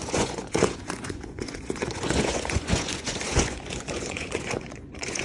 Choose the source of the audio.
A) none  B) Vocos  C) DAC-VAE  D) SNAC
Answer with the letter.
B